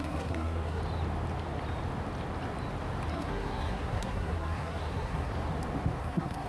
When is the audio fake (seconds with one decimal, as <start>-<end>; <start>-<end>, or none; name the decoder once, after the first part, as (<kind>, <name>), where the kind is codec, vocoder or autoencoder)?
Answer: 0.0-0.8 (codec, SNAC); 3.1-5.3; 6.0-6.5